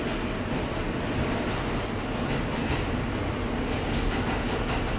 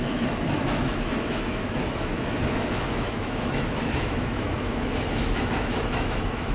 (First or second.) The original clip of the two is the first